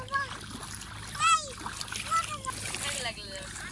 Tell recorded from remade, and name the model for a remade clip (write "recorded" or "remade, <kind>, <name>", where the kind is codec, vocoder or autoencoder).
recorded